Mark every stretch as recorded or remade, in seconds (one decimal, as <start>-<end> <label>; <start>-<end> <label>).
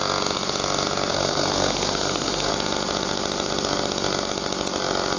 0.0-1.1 recorded; 1.1-2.5 remade; 2.5-5.2 recorded